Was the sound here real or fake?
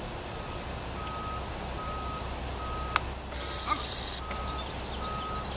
real